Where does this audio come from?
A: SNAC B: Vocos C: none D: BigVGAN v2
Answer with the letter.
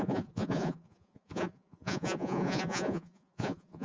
B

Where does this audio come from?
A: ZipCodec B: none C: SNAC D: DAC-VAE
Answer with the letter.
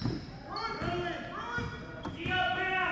B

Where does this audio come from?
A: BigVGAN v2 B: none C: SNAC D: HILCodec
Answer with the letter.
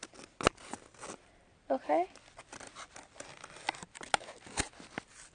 B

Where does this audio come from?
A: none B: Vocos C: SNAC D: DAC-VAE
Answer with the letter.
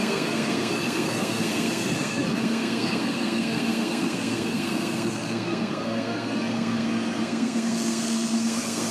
C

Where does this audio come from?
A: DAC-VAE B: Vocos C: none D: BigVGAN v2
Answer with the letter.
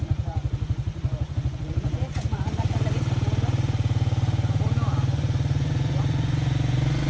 B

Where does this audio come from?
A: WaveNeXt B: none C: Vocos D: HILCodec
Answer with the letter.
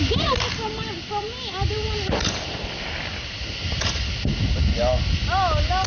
B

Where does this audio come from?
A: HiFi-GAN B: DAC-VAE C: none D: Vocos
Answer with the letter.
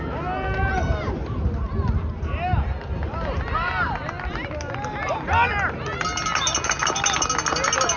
C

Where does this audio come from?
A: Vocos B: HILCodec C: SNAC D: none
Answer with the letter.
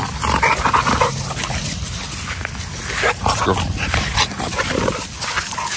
D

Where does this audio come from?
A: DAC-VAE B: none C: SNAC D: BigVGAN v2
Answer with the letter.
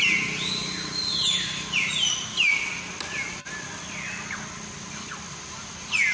B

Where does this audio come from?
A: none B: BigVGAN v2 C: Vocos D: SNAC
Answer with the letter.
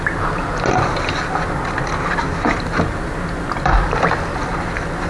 A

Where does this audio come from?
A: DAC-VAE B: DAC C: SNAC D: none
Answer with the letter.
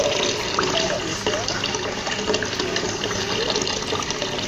D